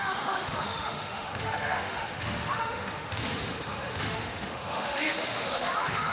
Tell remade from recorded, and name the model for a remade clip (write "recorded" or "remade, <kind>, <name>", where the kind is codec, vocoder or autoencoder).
remade, autoencoder, DAC-VAE